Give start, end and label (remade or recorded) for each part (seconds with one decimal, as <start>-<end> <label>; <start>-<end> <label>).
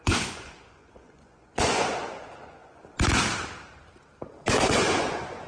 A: 0.0-2.8 remade; 2.8-4.7 recorded; 4.7-5.5 remade